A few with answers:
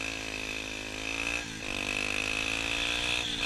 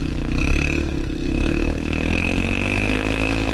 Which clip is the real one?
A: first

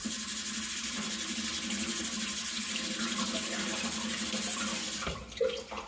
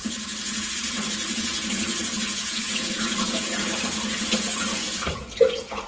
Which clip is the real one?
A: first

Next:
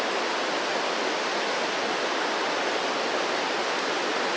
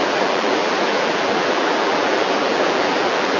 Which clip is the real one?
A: first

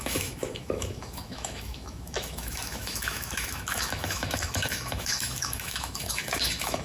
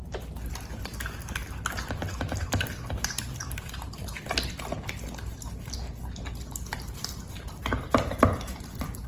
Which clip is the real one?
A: second